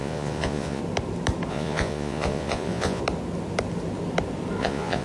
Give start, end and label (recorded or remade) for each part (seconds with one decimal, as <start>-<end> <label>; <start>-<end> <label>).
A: 0.0-0.8 remade; 0.8-1.5 recorded; 1.5-3.0 remade; 3.0-4.6 recorded; 4.6-5.0 remade